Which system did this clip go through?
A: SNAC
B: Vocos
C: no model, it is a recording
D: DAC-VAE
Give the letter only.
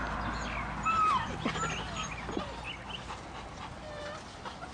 C